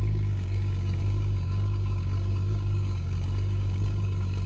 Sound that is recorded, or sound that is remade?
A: remade